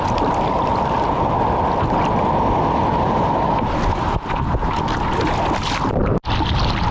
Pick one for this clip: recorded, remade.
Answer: recorded